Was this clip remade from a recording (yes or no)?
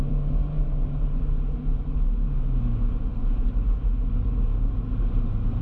yes